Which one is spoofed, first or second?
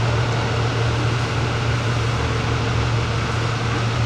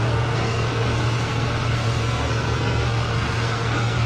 second